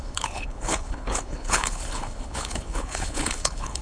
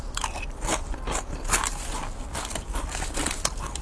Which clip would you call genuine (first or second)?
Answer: second